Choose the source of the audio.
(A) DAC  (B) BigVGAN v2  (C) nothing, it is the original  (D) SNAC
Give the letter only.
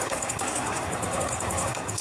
D